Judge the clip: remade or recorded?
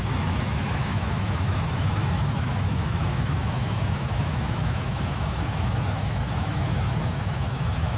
remade